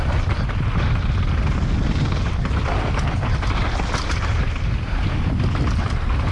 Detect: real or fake real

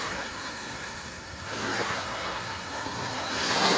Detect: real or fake fake